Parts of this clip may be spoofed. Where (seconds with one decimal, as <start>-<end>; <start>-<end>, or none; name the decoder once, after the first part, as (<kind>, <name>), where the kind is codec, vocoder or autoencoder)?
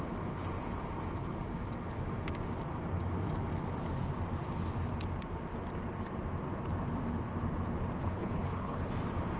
8.0-8.9 (codec, HILCodec)